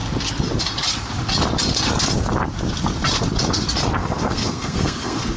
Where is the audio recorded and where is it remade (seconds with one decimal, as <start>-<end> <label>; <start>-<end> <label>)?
0.0-4.0 recorded; 4.0-5.4 remade